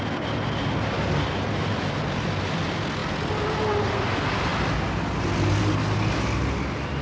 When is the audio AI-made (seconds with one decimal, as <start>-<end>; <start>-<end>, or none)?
none